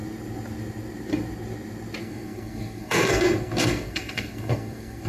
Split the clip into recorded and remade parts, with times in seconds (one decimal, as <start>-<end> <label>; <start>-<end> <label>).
0.0-2.0 recorded; 2.0-5.1 remade

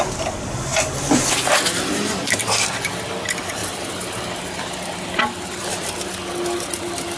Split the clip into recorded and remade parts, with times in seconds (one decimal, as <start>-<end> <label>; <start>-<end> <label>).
0.0-7.2 recorded

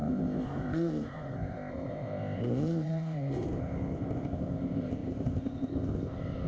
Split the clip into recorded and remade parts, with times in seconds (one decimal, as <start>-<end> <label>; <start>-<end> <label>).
0.0-6.5 remade

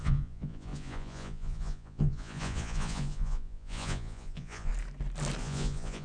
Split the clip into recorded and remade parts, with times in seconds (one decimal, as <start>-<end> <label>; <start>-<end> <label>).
0.0-4.7 remade; 4.7-5.4 recorded; 5.4-6.0 remade

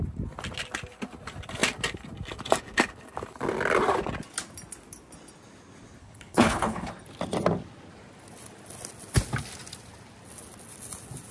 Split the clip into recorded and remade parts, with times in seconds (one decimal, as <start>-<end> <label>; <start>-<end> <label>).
0.0-6.0 recorded; 6.0-6.9 remade; 6.9-11.3 recorded

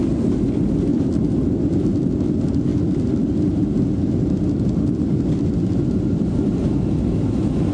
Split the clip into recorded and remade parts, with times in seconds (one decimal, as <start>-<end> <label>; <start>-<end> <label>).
0.0-7.7 recorded

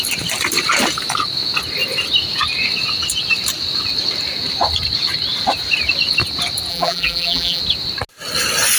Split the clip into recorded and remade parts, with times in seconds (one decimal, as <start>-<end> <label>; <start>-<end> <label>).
0.0-6.7 recorded; 6.7-7.6 remade; 7.6-8.8 recorded